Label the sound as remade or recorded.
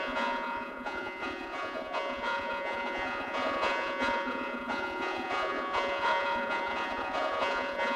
remade